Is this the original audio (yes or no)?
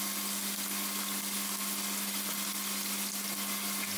yes